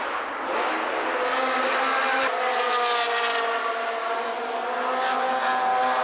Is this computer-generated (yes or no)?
no